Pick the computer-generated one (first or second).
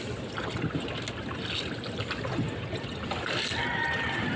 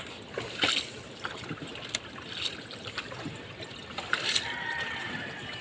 second